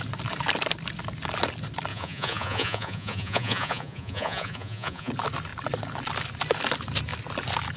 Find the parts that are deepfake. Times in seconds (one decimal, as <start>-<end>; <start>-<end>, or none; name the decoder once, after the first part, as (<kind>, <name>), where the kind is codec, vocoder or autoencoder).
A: 1.9-5.1 (vocoder, Vocos)